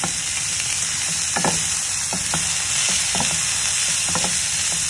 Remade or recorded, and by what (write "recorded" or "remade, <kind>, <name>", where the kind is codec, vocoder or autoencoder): recorded